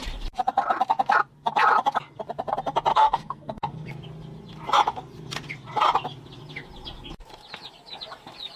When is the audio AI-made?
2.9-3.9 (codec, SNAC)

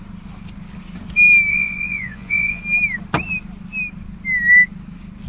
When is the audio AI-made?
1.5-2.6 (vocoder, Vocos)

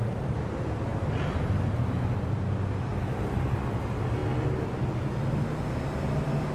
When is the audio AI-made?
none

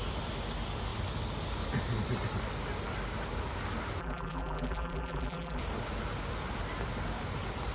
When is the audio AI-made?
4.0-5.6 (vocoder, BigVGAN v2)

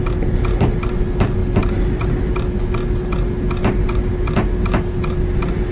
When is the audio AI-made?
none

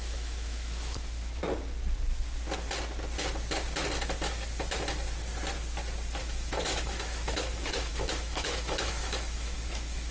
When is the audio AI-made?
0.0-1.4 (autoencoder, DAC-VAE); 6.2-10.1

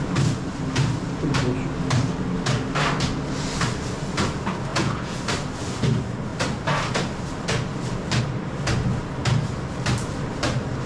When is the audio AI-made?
4.7-5.2 (vocoder, Vocos)

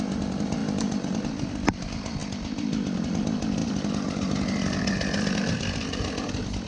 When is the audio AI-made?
none